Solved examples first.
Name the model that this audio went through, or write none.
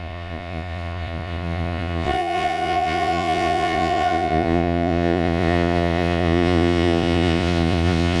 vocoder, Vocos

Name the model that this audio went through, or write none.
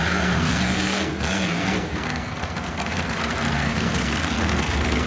codec, SNAC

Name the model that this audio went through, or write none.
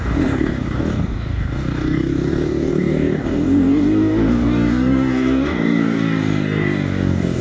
codec, DAC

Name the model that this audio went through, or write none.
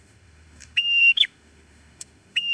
autoencoder, DAC-VAE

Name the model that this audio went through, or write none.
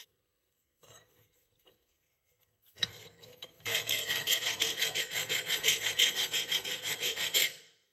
codec, SNAC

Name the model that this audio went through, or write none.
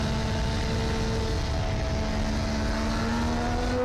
none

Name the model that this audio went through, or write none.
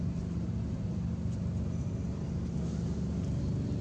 none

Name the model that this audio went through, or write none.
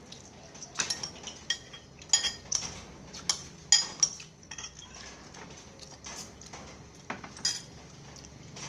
none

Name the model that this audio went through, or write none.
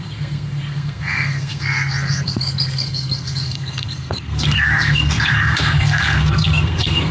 codec, SNAC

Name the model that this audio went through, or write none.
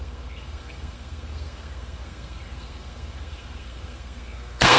codec, SNAC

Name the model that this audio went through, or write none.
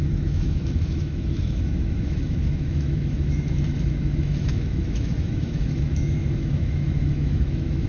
autoencoder, DAC-VAE